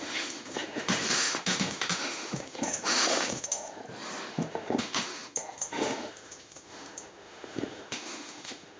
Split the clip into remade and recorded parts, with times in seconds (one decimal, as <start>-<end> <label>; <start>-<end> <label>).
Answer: 0.0-3.8 remade; 3.8-4.3 recorded; 4.3-8.8 remade